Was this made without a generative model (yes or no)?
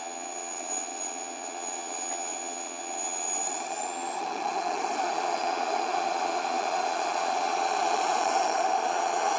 no